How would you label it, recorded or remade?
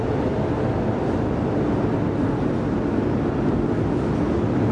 recorded